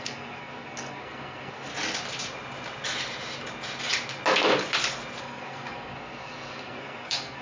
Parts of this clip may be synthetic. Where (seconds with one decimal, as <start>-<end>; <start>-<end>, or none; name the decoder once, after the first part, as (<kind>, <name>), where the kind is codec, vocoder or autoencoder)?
0.0-1.7 (codec, SNAC); 5.2-7.4